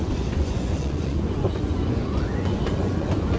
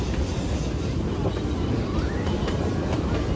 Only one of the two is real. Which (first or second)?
second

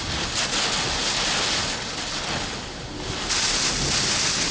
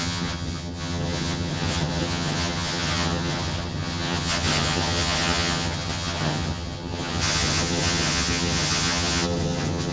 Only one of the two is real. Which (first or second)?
first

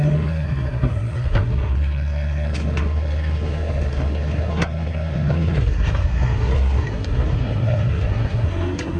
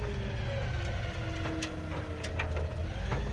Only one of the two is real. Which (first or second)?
second